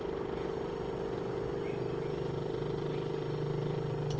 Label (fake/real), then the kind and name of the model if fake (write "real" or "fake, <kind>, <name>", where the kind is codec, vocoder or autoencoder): real